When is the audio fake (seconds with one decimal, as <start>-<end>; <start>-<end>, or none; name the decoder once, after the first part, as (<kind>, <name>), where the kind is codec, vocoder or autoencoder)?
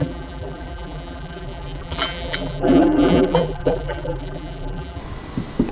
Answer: 0.0-5.0 (vocoder, BigVGAN v2)